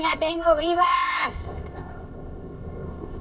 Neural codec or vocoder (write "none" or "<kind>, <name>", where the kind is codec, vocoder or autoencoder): codec, ZipCodec